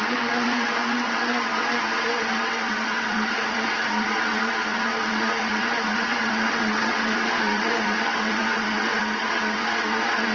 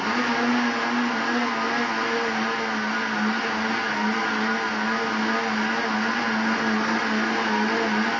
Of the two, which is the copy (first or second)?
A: first